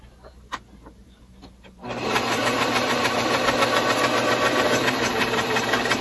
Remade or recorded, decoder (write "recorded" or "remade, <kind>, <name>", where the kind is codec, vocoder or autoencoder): remade, vocoder, BigVGAN v2